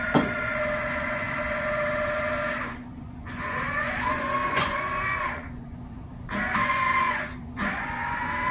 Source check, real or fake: fake